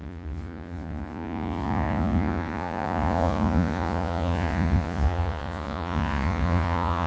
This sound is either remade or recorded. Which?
remade